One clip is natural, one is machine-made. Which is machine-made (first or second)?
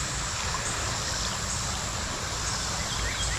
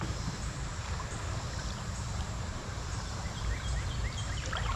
second